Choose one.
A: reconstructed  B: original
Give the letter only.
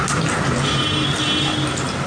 B